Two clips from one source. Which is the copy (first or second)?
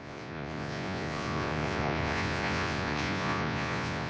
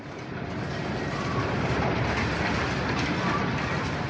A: first